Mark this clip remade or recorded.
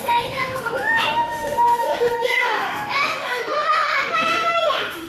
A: remade